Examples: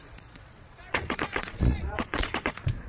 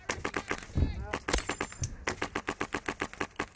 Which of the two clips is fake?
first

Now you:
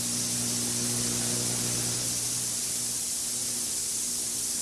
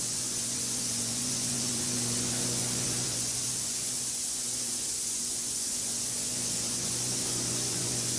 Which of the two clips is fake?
second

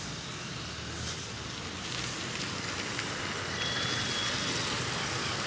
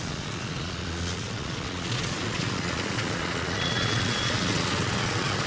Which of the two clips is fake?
second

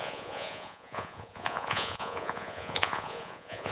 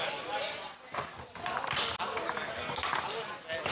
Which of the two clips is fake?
first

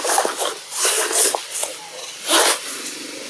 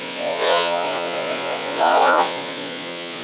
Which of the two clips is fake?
second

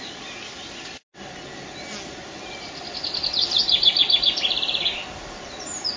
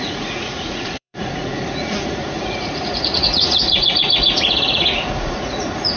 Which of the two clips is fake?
second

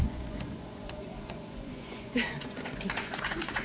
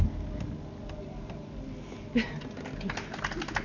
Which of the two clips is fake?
first